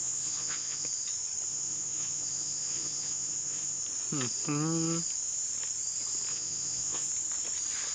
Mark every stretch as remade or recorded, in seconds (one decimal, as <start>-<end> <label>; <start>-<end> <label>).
0.0-0.9 remade; 0.9-1.5 recorded; 1.5-3.8 remade; 3.8-6.3 recorded; 6.3-7.1 remade; 7.1-7.9 recorded